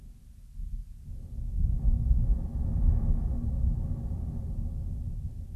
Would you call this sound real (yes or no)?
yes